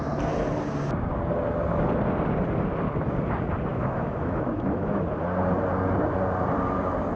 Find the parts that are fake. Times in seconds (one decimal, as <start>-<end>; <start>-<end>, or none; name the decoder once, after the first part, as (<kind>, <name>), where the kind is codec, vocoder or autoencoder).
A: 3.7-5.0 (autoencoder, DAC-VAE)